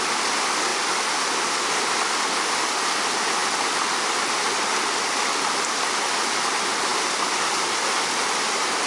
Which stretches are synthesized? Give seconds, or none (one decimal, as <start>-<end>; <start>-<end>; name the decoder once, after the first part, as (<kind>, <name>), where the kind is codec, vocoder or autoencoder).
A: none